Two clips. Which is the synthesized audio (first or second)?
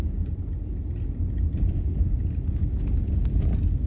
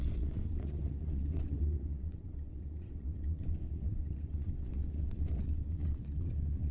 second